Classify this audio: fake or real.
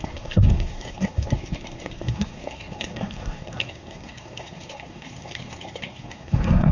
fake